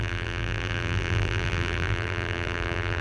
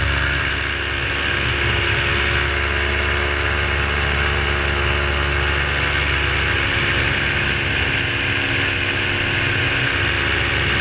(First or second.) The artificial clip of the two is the first